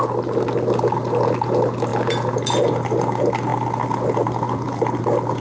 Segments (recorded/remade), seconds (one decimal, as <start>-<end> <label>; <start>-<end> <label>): 0.0-5.4 recorded